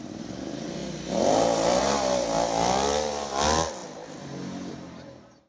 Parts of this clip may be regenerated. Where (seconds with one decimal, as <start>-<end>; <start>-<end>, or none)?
none